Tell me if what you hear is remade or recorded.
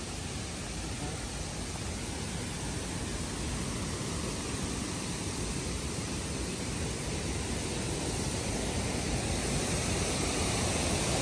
recorded